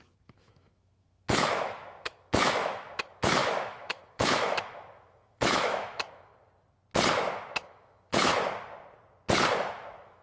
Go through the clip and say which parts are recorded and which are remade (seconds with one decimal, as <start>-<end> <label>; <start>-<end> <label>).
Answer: 0.0-6.3 remade; 6.3-7.5 recorded; 7.5-8.3 remade; 8.3-9.6 recorded; 9.6-10.2 remade

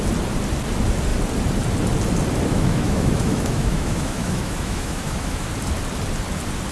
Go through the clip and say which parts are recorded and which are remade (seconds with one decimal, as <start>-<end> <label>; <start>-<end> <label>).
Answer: 0.0-2.5 recorded; 2.5-5.5 remade; 5.5-6.7 recorded

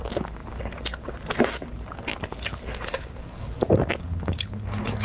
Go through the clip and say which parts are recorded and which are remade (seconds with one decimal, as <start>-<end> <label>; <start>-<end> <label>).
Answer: 0.0-5.0 recorded

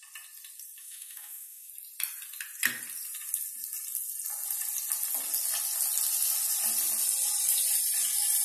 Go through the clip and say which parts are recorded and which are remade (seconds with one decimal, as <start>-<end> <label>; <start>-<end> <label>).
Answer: 0.0-0.8 recorded; 0.8-1.7 remade; 1.7-8.4 recorded

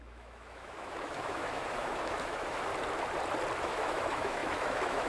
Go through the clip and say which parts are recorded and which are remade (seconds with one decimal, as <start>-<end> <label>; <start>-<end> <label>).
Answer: 0.0-2.7 remade; 2.7-3.6 recorded; 3.6-5.1 remade